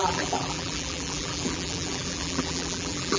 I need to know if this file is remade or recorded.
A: remade